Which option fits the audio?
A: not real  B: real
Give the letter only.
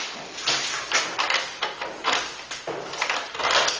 B